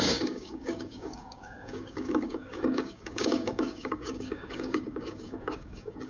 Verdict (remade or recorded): remade